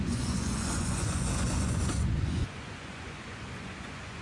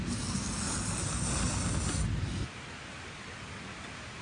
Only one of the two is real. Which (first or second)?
second